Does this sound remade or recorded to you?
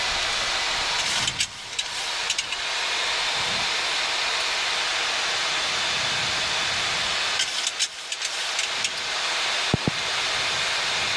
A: recorded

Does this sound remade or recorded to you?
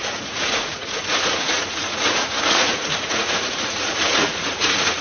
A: remade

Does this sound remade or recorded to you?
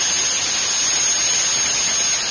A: recorded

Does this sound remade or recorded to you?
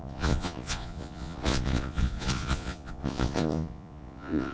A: remade